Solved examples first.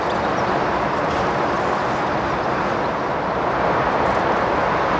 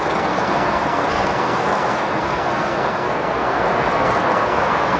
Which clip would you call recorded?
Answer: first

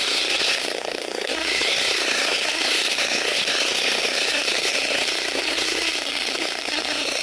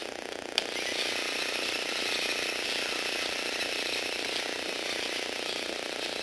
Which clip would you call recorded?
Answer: second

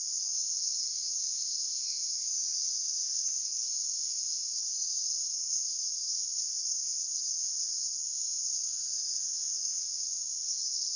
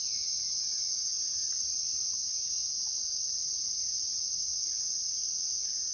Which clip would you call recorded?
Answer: second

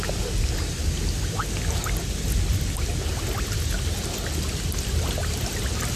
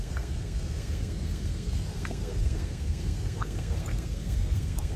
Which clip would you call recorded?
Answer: first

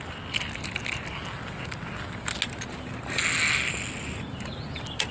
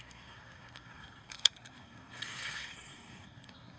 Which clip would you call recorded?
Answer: first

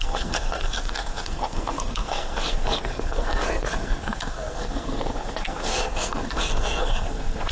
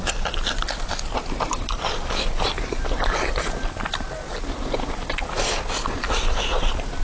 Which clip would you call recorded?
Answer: second